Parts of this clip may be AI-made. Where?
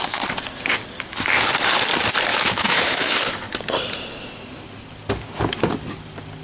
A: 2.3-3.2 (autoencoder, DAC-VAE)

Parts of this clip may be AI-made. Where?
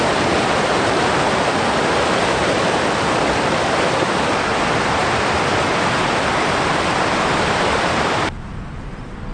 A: none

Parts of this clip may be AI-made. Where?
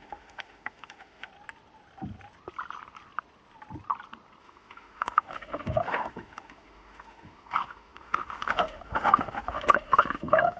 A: 0.0-1.3 (autoencoder, DAC-VAE); 4.4-10.6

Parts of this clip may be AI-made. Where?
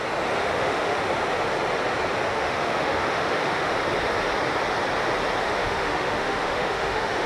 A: 0.4-1.0 (autoencoder, DAC-VAE); 2.3-3.7; 5.4-7.3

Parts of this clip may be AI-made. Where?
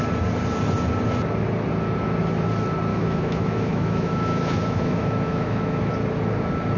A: 2.9-5.9 (autoencoder, DAC-VAE)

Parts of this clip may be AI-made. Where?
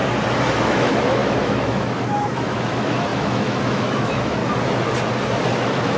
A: 0.6-4.4 (autoencoder, DAC-VAE); 5.6-6.0